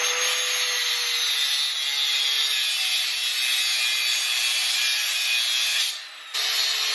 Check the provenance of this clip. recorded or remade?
recorded